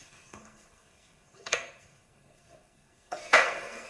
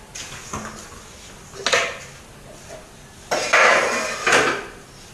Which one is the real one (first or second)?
second